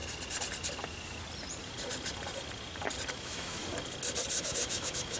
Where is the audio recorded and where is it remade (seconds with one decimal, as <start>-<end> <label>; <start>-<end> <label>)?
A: 0.0-3.1 recorded; 3.1-3.6 remade; 3.6-4.4 recorded; 4.4-5.2 remade